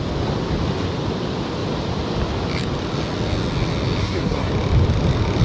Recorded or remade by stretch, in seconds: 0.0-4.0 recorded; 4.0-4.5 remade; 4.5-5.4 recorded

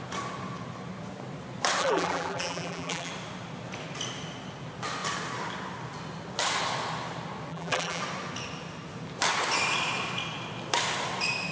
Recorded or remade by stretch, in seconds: 0.0-1.8 recorded; 1.8-3.1 remade; 3.1-7.5 recorded; 7.5-8.0 remade; 8.0-11.5 recorded

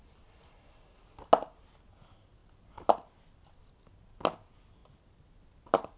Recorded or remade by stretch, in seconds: 0.0-4.8 recorded; 4.8-6.0 remade